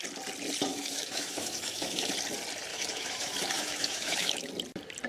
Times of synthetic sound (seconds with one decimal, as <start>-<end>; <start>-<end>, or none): 0.7-2.1; 2.7-4.5